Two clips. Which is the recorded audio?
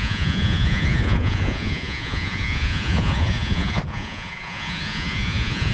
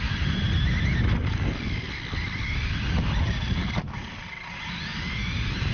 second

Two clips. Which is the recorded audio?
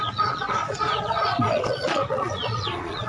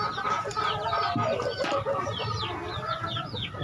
second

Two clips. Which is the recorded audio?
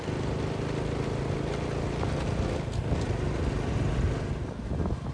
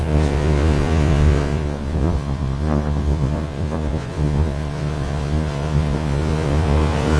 first